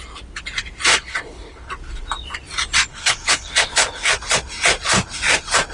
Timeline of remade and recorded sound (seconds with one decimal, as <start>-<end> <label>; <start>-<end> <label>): 0.0-0.9 recorded; 0.9-1.7 remade; 1.7-2.9 recorded; 2.9-4.1 remade; 4.1-5.7 recorded